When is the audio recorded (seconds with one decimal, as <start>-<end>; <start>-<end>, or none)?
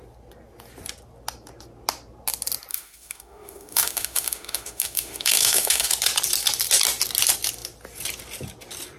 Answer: 0.0-2.7; 5.9-9.0